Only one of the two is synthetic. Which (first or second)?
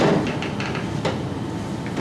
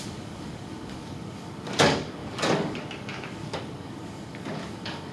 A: second